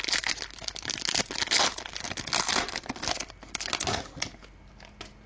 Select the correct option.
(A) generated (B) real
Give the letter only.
B